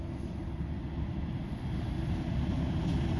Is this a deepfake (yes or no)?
no